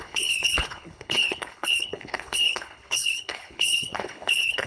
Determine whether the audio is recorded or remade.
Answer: remade